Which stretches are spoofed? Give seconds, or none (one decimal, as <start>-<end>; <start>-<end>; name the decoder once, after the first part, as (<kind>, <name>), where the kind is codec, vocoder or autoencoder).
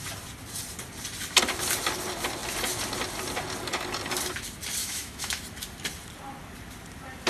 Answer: 4.8-5.4 (autoencoder, DAC-VAE)